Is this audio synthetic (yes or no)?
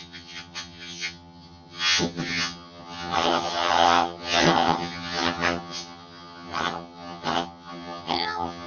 yes